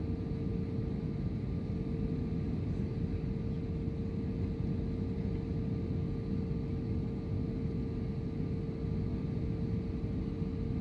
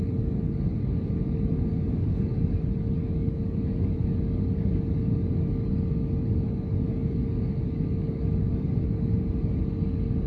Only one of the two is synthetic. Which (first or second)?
second